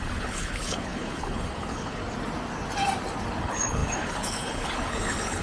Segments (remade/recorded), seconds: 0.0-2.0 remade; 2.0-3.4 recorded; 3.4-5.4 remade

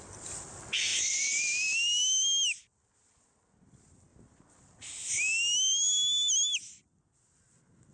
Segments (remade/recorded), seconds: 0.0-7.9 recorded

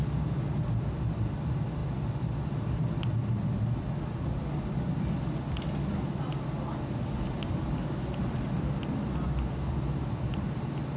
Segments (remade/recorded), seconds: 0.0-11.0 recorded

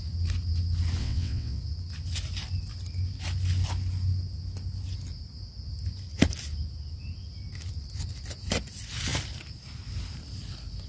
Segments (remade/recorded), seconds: 0.0-1.0 recorded; 1.0-1.6 remade; 1.6-10.9 recorded

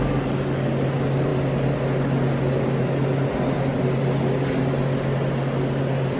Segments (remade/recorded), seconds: 0.0-6.2 recorded